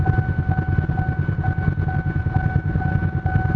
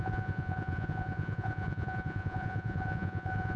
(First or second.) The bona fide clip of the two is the first